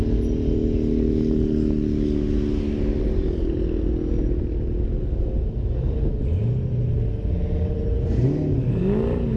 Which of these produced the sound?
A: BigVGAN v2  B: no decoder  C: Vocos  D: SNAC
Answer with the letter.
B